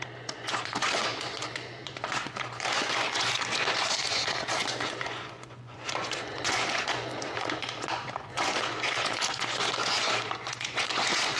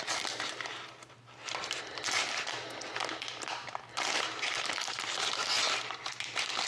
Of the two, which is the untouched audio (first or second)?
second